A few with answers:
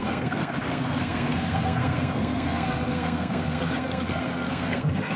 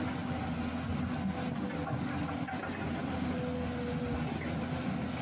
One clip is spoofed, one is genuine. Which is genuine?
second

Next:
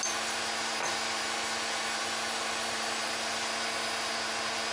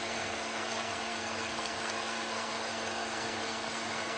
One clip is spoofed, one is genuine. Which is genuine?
first